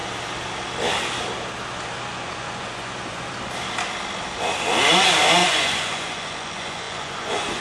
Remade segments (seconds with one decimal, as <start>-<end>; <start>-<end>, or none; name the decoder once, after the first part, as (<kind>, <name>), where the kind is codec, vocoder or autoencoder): 2.1-3.2 (vocoder, Vocos); 5.4-7.6